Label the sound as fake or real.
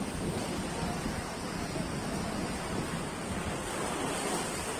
real